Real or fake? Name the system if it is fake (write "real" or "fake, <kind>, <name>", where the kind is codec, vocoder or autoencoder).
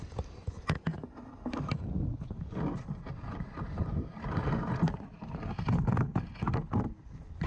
real